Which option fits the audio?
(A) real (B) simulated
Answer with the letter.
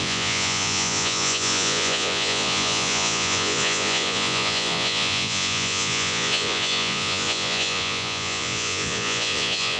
B